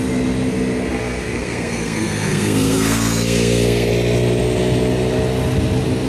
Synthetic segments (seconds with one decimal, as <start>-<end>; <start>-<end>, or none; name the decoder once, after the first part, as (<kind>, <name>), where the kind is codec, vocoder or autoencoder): 0.9-3.9 (codec, SNAC)